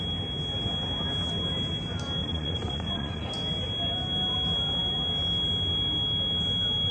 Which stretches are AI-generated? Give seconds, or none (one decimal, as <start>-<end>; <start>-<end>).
2.2-3.3